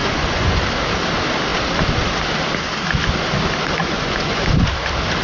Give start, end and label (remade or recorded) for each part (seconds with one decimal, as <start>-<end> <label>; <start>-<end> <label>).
0.0-0.6 remade; 0.6-3.8 recorded; 3.8-4.5 remade; 4.5-5.2 recorded